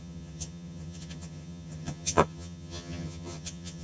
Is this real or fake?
fake